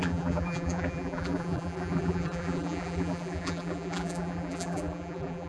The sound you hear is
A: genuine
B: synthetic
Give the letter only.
B